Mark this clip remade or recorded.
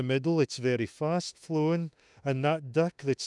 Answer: remade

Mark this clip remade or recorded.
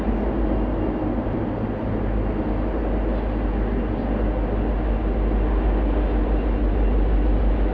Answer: recorded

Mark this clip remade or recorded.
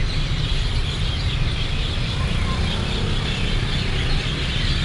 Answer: recorded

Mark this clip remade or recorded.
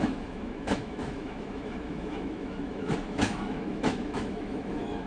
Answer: remade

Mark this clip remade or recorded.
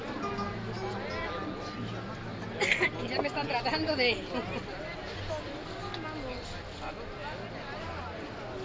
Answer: recorded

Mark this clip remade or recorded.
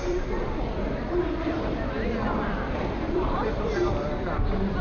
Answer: remade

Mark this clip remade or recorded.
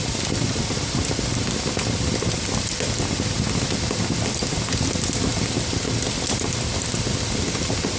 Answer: recorded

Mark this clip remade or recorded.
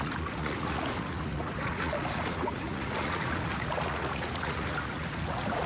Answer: remade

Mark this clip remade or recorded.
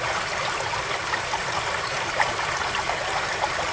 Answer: recorded